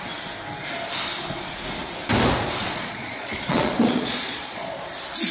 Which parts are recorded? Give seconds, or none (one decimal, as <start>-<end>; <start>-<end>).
0.0-2.6; 4.7-5.3